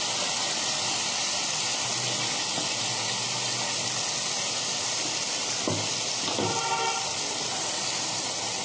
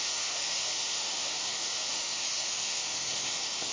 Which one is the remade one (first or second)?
second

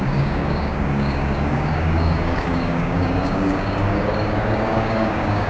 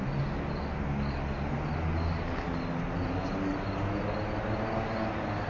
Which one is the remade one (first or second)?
first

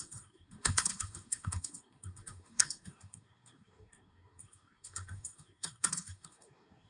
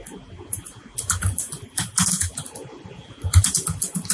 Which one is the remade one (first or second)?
first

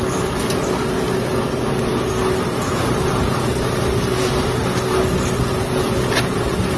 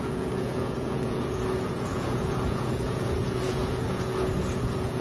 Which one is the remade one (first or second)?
second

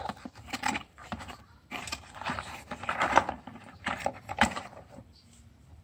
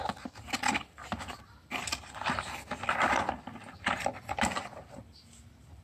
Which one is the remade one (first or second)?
first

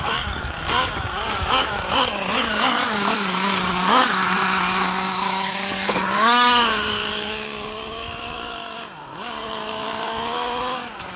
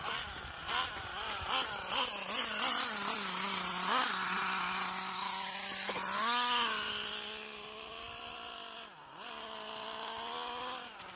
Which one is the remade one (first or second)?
first